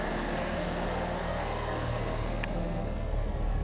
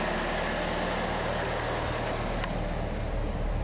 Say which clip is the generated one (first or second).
first